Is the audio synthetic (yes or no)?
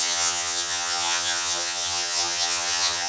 yes